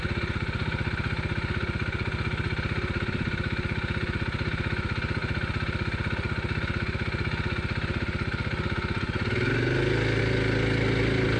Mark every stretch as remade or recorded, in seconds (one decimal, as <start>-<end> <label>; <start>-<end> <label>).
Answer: 0.0-11.4 recorded